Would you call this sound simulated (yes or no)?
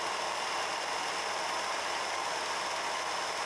no